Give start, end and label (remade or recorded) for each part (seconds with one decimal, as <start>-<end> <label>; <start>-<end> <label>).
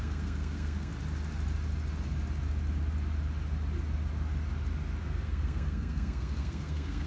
0.0-0.9 remade; 0.9-5.0 recorded; 5.0-7.1 remade